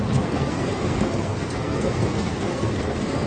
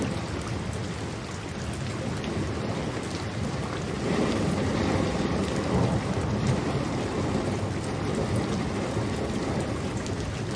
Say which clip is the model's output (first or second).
first